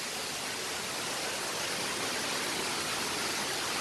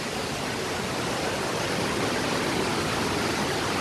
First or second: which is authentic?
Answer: first